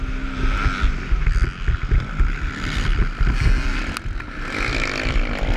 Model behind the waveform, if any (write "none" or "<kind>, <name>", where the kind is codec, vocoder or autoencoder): none